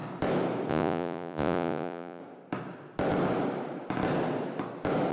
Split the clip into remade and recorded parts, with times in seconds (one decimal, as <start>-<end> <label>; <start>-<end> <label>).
0.0-0.7 recorded; 0.7-2.2 remade; 2.2-5.1 recorded

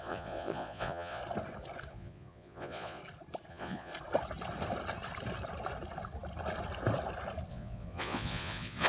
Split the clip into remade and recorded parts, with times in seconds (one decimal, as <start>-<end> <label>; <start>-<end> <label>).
0.0-1.2 remade; 1.2-1.9 recorded; 1.9-3.0 remade; 3.0-3.5 recorded; 3.5-3.9 remade; 3.9-7.5 recorded; 7.5-8.9 remade

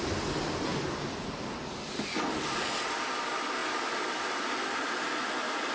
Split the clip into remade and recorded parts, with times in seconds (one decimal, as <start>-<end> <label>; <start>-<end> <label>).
0.0-5.7 recorded